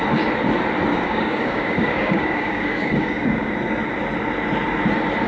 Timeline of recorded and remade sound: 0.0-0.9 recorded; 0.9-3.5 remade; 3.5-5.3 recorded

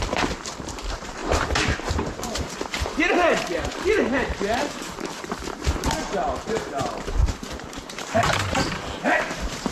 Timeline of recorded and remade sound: 0.0-1.2 remade; 1.2-2.2 recorded; 2.2-9.7 remade

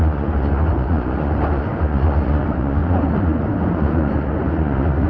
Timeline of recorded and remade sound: 0.0-5.1 remade

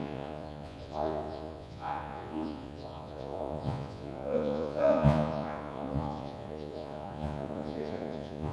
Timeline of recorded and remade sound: 0.0-8.5 remade

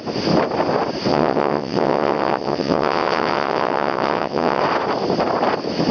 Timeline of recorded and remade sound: 0.0-1.1 recorded; 1.1-4.6 remade; 4.6-5.9 recorded

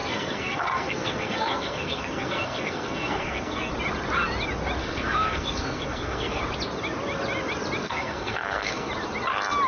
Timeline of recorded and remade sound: 0.0-3.7 remade; 3.7-4.8 recorded; 4.8-6.4 remade; 6.4-7.8 recorded; 7.8-8.9 remade; 8.9-9.7 recorded

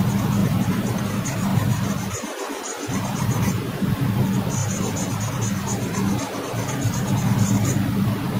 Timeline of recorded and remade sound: 0.0-0.4 recorded; 0.4-1.0 remade; 1.0-1.5 recorded; 1.5-3.9 remade; 3.9-4.6 recorded; 4.6-5.3 remade; 5.3-8.4 recorded

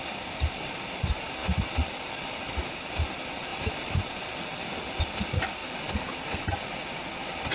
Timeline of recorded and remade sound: 0.0-1.4 recorded; 1.4-2.5 remade; 2.5-7.5 recorded